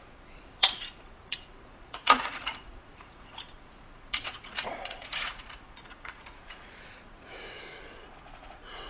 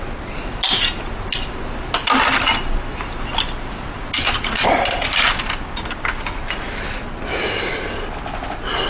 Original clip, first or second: second